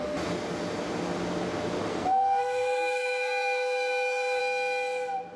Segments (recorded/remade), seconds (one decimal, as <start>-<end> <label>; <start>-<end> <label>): 0.0-1.9 recorded; 1.9-4.4 remade; 4.4-5.4 recorded